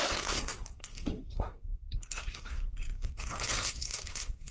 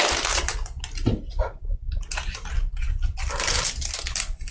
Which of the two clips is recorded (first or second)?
second